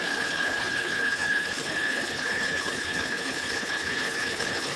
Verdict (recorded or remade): remade